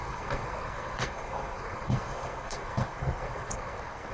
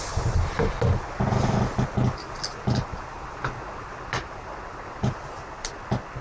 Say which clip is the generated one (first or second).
first